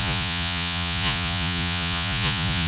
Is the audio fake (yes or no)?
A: yes